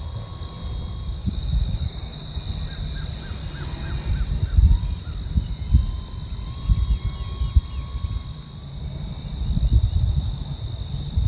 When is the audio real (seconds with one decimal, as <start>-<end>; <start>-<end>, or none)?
0.0-1.2; 2.4-11.3